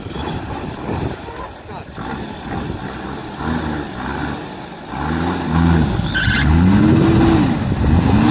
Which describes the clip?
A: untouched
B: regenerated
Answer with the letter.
A